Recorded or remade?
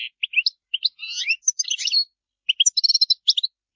recorded